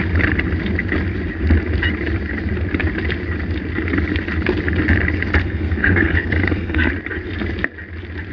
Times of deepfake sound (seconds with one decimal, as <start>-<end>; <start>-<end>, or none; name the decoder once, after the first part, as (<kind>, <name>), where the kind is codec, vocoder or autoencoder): 5.4-6.9 (codec, SNAC)